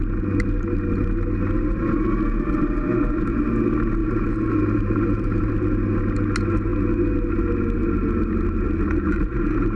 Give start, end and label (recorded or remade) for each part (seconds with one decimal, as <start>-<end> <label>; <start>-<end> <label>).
0.0-4.0 recorded; 4.0-5.5 remade; 5.5-9.8 recorded